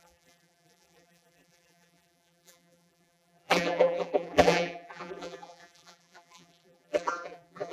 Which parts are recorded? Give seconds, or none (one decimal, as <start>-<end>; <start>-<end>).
none